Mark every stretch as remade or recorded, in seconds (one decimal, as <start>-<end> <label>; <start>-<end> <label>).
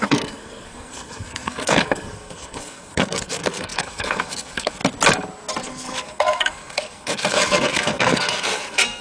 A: 0.0-4.8 remade; 4.8-5.6 recorded; 5.6-9.0 remade